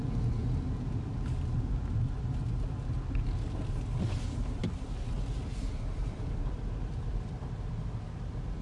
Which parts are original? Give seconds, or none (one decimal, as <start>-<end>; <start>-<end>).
0.0-8.6